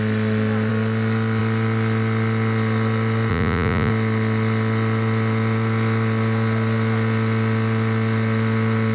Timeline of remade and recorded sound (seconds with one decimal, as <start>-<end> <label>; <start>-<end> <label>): 0.0-3.3 recorded; 3.3-3.9 remade; 3.9-8.9 recorded